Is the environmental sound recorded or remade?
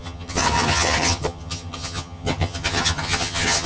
remade